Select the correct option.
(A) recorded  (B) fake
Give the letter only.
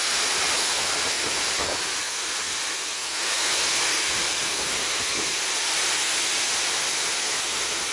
A